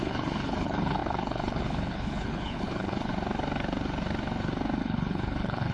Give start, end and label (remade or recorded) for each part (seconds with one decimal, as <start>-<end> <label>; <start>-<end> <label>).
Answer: 0.0-3.1 remade; 3.1-4.8 recorded; 4.8-5.7 remade